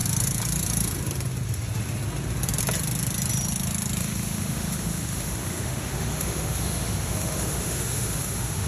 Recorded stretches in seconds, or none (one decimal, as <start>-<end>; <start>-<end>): 0.0-4.0

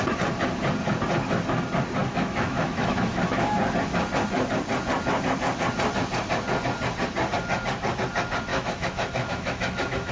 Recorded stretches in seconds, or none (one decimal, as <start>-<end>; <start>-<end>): 0.0-2.0; 3.6-8.5